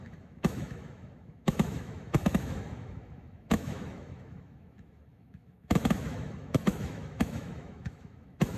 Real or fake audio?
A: fake